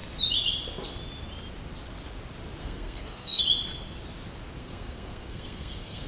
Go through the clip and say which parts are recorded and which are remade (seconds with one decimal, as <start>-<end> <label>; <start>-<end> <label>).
0.0-2.6 recorded; 2.6-3.4 remade; 3.4-4.6 recorded; 4.6-6.1 remade